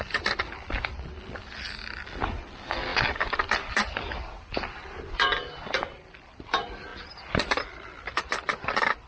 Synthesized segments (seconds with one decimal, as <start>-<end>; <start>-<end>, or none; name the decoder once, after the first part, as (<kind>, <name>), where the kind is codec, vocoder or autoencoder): none